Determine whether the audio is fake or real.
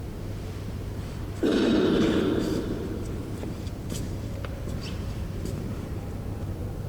fake